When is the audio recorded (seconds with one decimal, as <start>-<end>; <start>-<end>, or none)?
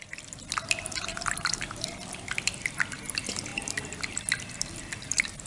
0.0-1.1; 1.9-5.5